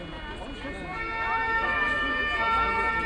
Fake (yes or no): no